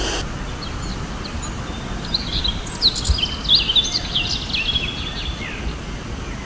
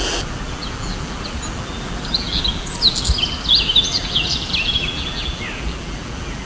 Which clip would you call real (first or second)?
first